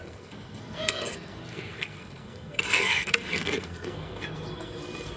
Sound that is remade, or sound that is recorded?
remade